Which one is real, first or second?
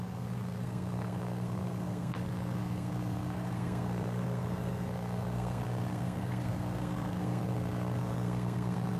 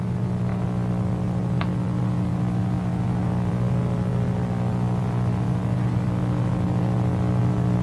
second